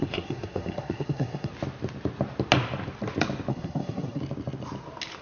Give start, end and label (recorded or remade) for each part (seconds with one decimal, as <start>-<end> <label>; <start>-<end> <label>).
0.0-1.5 remade; 1.5-3.5 recorded; 3.5-4.2 remade; 4.2-5.2 recorded